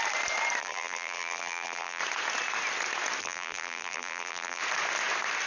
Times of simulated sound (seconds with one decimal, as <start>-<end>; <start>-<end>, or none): 0.6-2.0; 3.2-4.6